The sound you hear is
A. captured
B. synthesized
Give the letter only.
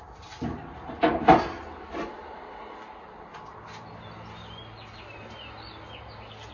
A